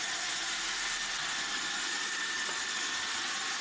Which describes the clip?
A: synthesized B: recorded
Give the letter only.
B